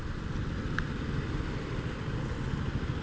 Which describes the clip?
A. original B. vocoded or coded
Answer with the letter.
A